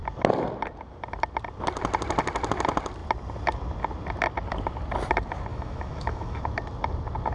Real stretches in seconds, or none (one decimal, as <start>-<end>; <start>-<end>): 0.0-5.5; 6.4-7.3